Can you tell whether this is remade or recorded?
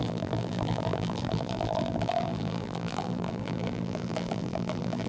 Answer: remade